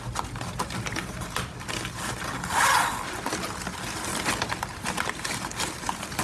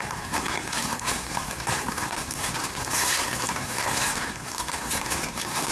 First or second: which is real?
first